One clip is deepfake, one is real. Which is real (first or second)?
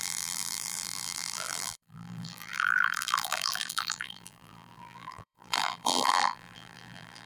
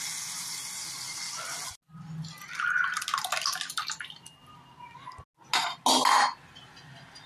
second